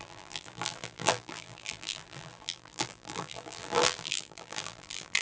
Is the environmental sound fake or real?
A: fake